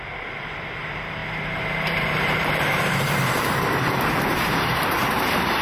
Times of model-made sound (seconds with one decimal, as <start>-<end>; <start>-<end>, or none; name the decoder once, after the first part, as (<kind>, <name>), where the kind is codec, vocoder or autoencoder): 0.0-5.6 (vocoder, BigVGAN v2)